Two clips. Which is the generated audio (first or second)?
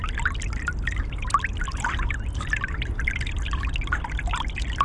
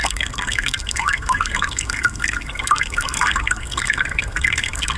second